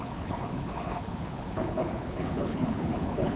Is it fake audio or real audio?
fake